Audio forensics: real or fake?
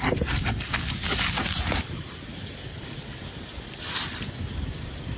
real